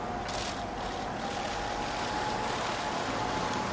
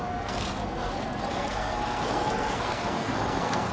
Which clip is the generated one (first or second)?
second